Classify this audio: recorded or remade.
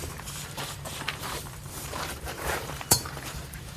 remade